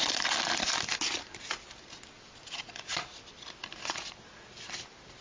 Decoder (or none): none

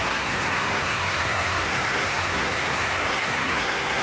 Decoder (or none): codec, SNAC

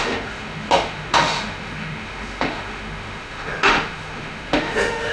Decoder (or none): autoencoder, DAC-VAE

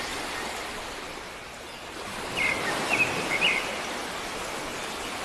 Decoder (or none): none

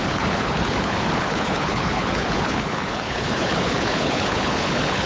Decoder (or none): codec, HILCodec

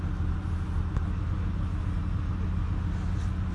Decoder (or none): none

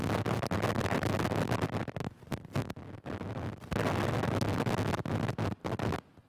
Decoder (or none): none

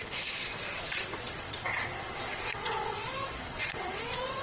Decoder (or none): vocoder, WaveNeXt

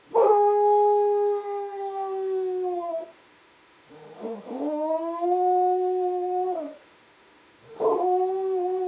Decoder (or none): autoencoder, DAC-VAE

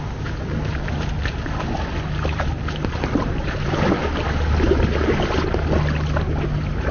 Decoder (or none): none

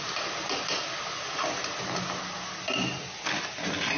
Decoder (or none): none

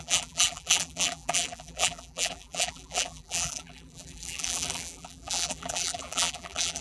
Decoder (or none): vocoder, BigVGAN v2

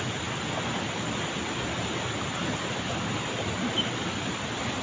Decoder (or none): none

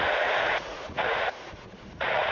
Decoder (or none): vocoder, Vocos